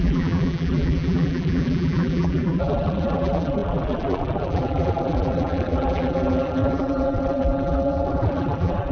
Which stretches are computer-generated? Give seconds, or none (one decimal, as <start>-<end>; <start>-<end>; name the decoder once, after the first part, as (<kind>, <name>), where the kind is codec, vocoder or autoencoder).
0.0-8.9 (vocoder, BigVGAN v2)